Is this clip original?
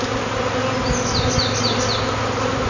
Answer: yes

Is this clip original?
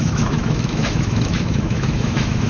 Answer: no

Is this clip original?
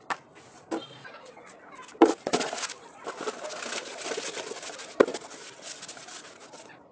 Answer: yes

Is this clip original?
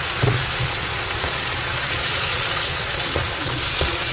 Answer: no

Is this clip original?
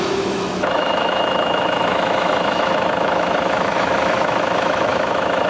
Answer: no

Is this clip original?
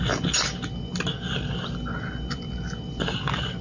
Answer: yes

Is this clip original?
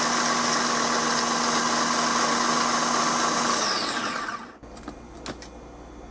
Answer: yes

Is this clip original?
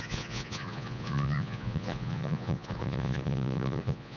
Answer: no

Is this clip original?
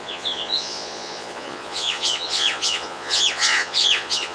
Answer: no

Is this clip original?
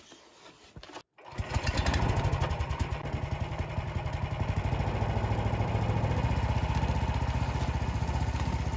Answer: yes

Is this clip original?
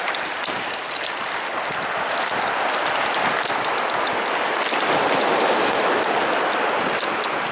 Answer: yes